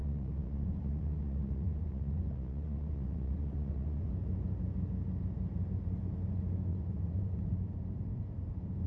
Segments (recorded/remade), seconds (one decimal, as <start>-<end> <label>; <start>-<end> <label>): 0.0-4.1 remade; 4.1-6.7 recorded; 6.7-7.5 remade; 7.5-8.9 recorded

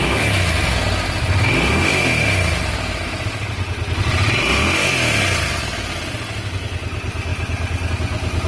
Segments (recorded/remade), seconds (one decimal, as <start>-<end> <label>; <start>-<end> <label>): 0.0-8.5 recorded

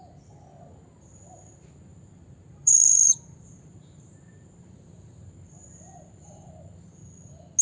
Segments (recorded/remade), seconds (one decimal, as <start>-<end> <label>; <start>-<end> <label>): 0.0-1.9 recorded; 1.9-6.5 remade; 6.5-7.6 recorded

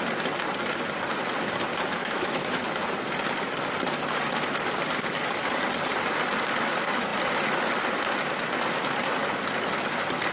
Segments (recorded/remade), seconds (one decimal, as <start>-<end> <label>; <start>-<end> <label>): 0.0-2.0 recorded; 2.0-2.6 remade; 2.6-10.3 recorded